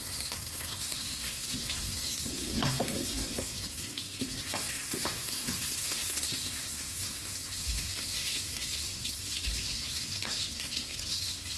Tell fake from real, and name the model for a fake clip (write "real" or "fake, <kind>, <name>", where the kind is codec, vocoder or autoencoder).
fake, codec, SNAC